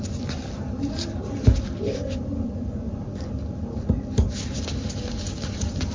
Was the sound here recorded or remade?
recorded